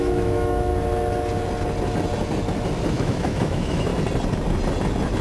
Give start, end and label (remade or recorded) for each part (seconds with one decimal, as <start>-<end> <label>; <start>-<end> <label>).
0.0-0.7 remade; 0.7-2.9 recorded; 2.9-3.9 remade; 3.9-5.2 recorded